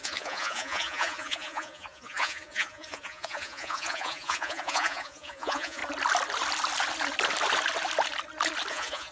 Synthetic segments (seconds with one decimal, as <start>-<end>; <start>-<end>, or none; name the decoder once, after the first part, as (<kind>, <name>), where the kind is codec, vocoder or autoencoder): 0.0-5.8 (vocoder, Vocos); 8.7-9.1